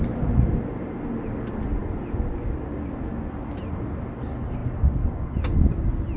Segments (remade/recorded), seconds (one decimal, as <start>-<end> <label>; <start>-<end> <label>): 0.0-6.2 recorded